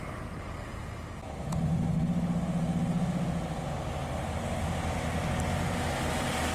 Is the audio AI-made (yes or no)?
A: no